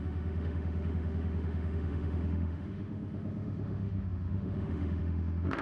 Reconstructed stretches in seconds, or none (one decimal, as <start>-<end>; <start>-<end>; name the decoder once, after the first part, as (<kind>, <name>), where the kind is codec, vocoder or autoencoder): 0.0-5.6 (autoencoder, DAC-VAE)